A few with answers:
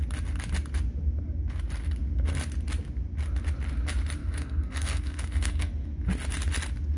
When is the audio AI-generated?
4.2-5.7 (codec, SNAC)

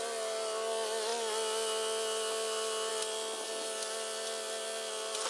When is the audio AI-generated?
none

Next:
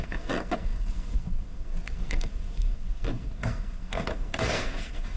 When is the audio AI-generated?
0.0-5.2 (codec, SNAC)